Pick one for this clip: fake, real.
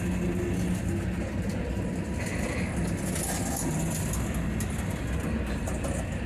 real